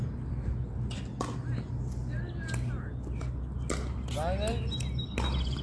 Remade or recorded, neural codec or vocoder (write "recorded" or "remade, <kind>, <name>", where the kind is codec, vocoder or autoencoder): recorded